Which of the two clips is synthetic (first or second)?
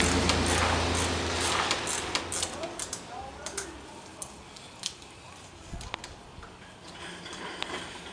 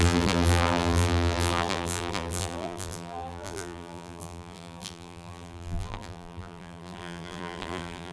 second